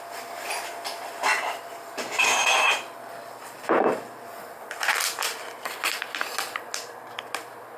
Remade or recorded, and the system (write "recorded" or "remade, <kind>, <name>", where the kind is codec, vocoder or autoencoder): recorded